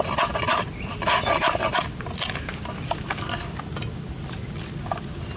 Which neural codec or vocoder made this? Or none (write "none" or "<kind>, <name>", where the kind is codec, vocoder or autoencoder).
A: none